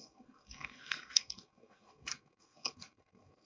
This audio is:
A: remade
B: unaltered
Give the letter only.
A